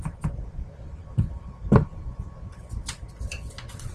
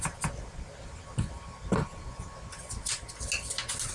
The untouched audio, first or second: second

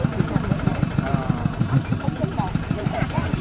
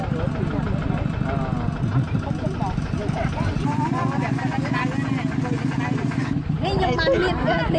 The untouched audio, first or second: second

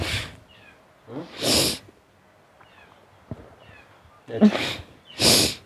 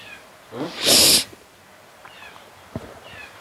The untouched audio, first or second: first